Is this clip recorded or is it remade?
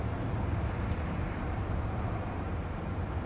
remade